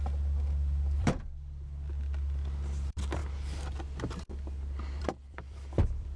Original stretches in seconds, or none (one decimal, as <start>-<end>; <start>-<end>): 3.2-5.0